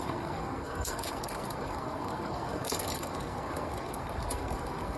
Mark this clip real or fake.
fake